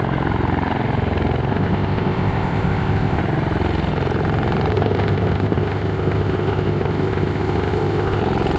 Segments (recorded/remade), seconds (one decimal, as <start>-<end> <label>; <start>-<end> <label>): 0.0-1.5 recorded; 1.5-3.2 remade; 3.2-4.7 recorded; 4.7-8.2 remade; 8.2-8.6 recorded